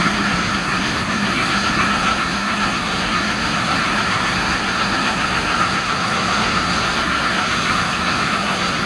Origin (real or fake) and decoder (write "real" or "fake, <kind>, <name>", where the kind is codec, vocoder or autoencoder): fake, codec, SNAC